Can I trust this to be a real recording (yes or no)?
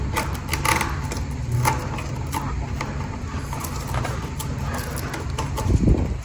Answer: yes